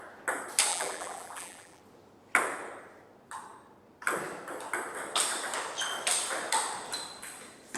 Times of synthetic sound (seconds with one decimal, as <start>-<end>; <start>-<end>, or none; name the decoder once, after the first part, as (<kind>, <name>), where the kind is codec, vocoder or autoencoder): 0.7-1.8 (vocoder, BigVGAN v2)